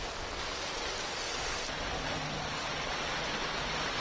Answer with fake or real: real